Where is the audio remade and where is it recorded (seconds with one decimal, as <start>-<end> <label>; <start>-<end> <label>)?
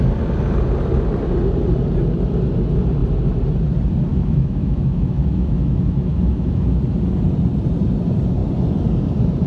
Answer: 0.0-4.1 recorded; 4.1-6.8 remade; 6.8-9.5 recorded